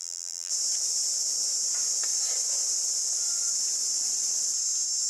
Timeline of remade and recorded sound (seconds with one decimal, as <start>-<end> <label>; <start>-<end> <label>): 0.0-0.5 remade; 0.5-5.1 recorded